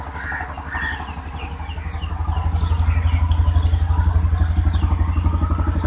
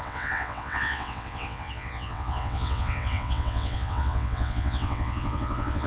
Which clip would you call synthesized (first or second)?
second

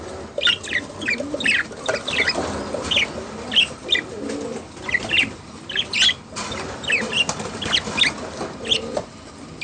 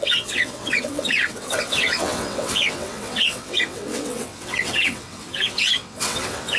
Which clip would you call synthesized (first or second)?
second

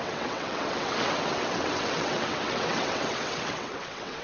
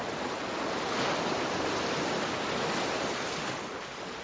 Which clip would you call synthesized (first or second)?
first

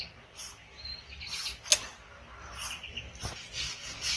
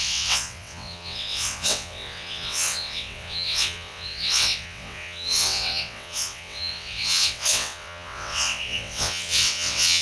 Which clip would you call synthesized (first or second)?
second